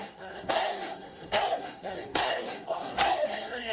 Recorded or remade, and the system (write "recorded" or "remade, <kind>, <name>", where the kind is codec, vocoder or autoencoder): remade, codec, SNAC